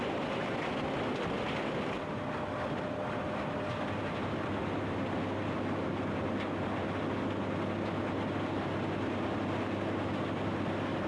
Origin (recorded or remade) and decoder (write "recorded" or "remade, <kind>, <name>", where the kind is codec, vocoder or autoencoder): recorded